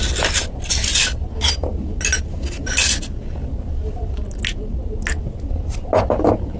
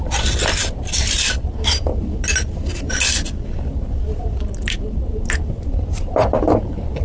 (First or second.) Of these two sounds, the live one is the first